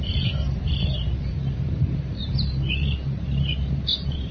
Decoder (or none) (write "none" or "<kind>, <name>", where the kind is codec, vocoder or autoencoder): vocoder, BigVGAN v2